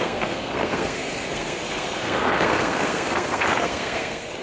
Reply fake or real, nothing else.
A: fake